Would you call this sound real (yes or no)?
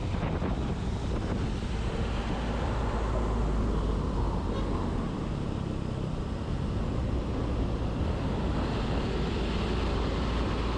yes